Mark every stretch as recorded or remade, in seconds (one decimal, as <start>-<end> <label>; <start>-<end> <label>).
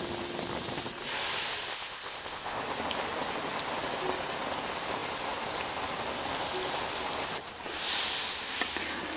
0.0-1.7 recorded; 1.7-2.6 remade; 2.6-9.2 recorded